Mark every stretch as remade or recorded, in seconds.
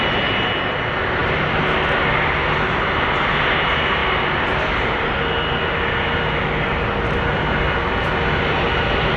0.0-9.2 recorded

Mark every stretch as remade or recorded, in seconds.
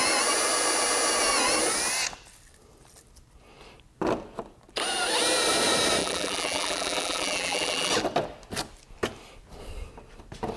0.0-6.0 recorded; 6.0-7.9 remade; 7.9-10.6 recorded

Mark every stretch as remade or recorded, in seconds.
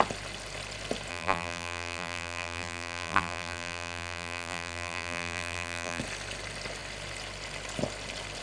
0.0-1.1 recorded; 1.1-6.0 remade; 6.0-8.4 recorded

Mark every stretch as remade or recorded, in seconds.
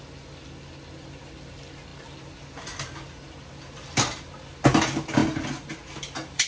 0.0-6.5 recorded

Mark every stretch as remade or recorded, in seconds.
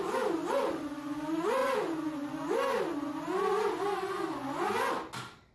0.0-5.5 recorded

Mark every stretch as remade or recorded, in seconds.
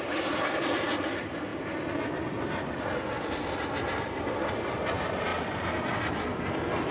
0.0-1.5 remade; 1.5-4.5 recorded; 4.5-6.9 remade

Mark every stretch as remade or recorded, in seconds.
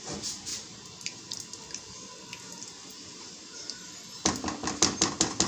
0.0-0.5 recorded; 0.5-1.4 remade; 1.4-2.9 recorded; 2.9-3.8 remade; 3.8-5.5 recorded